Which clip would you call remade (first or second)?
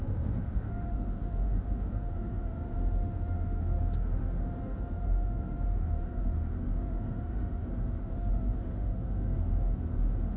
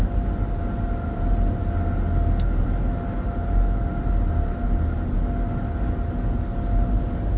first